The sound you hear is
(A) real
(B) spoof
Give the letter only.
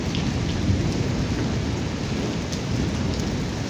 A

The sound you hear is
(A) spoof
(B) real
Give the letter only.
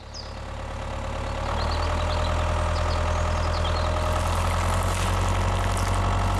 B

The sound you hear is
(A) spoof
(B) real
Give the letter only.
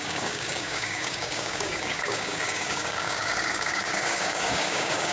A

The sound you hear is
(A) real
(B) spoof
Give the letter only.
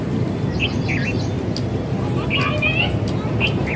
A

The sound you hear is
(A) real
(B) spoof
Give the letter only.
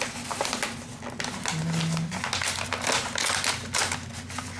A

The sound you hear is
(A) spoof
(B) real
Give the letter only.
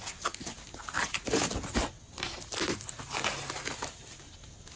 B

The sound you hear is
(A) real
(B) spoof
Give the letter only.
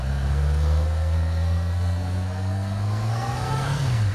B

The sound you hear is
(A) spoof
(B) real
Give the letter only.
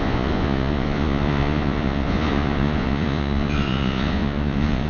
A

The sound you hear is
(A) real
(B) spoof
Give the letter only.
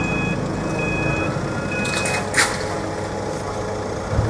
A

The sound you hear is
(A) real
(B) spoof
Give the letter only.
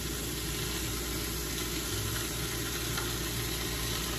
A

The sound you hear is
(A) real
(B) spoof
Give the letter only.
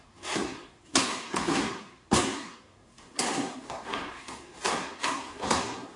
B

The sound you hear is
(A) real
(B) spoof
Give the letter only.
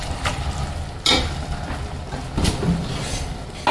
A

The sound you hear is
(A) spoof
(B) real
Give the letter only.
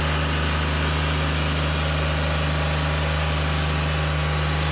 B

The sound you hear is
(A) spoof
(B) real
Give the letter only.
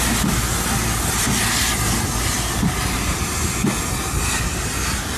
B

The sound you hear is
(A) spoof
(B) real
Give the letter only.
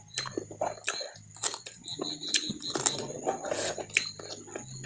B